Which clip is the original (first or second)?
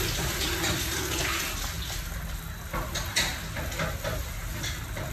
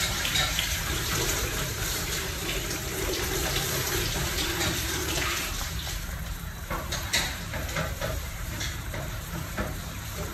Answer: first